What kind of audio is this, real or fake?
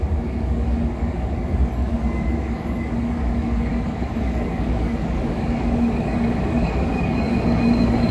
fake